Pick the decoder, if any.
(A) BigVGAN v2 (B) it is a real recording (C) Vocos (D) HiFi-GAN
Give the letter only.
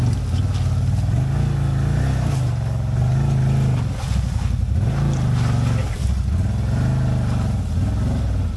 B